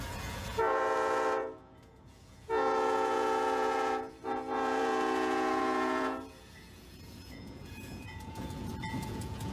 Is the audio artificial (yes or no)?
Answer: yes